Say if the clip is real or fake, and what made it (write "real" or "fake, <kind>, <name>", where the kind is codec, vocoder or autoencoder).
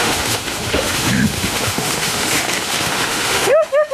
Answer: fake, autoencoder, DAC-VAE